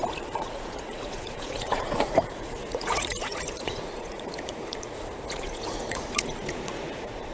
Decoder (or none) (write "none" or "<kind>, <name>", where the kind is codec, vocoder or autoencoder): vocoder, Vocos